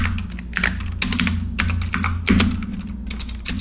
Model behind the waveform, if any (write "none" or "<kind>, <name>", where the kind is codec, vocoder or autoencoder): none